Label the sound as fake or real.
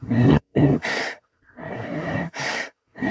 fake